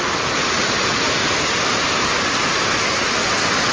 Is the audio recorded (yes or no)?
yes